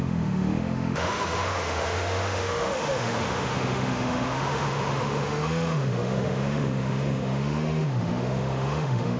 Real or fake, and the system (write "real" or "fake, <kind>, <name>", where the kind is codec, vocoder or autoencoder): fake, autoencoder, DAC-VAE